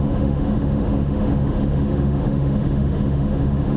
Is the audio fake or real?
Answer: fake